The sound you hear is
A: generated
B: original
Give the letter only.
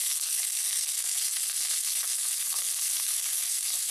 A